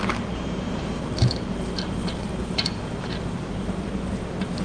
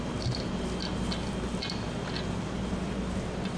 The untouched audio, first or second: second